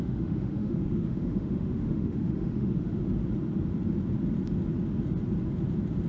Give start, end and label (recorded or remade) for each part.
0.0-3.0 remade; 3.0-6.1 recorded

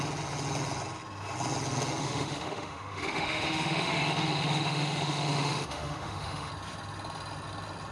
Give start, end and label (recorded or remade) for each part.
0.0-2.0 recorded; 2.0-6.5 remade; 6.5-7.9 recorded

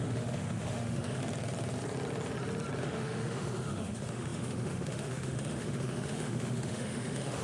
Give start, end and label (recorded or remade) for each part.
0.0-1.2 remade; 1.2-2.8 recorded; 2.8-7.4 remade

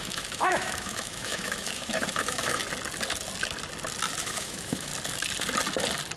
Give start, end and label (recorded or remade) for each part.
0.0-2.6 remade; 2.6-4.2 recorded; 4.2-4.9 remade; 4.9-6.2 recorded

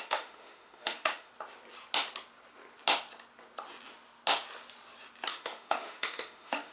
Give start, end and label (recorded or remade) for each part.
0.0-1.3 remade; 1.3-5.3 recorded; 5.3-6.7 remade